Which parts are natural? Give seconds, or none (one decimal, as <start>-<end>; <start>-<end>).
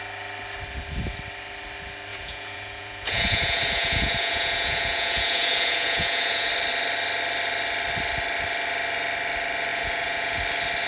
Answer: 0.0-2.1; 6.5-9.7; 10.4-10.9